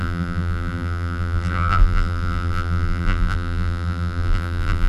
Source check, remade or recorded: remade